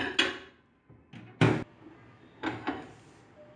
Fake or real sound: real